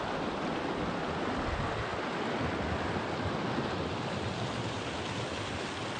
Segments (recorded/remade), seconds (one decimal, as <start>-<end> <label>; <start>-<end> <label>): 0.0-6.0 recorded

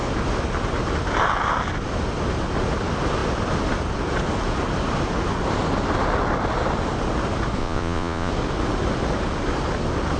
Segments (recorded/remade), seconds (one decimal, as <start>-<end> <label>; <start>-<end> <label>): 0.0-7.6 recorded; 7.6-8.3 remade; 8.3-10.2 recorded